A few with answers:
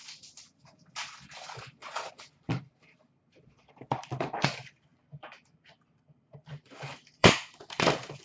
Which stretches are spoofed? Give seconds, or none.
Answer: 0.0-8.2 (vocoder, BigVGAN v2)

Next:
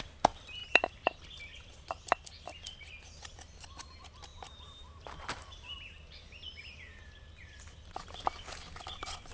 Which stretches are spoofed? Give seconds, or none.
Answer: 0.6-1.2 (vocoder, BigVGAN v2); 4.3-7.0

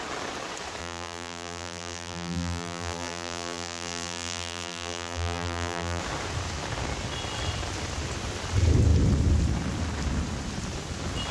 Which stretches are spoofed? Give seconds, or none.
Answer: 0.8-6.0 (vocoder, BigVGAN v2)

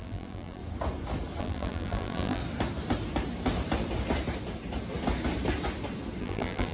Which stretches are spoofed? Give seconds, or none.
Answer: 0.0-0.6 (vocoder, BigVGAN v2); 1.4-2.4; 6.2-6.7

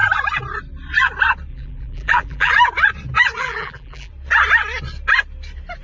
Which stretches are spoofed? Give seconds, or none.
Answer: 1.5-2.5 (vocoder, BigVGAN v2); 3.4-4.1